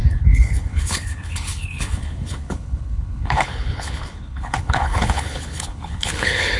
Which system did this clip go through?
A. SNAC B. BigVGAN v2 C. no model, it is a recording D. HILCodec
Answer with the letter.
D